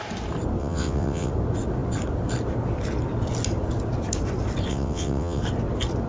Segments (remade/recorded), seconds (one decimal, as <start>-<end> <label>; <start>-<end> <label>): 0.0-0.6 recorded; 0.6-1.3 remade; 1.3-4.7 recorded; 4.7-5.4 remade; 5.4-6.1 recorded